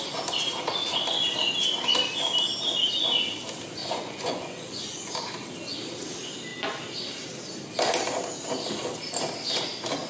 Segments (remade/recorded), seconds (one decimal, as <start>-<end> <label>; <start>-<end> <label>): 0.0-3.8 recorded; 3.8-5.1 remade; 5.1-10.1 recorded